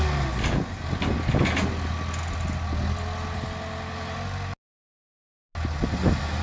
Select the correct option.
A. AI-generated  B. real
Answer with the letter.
B